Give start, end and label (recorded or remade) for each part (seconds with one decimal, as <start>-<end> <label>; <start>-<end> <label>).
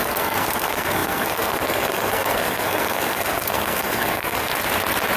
0.0-4.5 remade; 4.5-5.2 recorded